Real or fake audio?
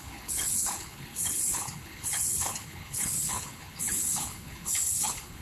fake